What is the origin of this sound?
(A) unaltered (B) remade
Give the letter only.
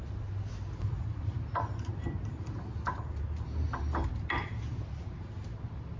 A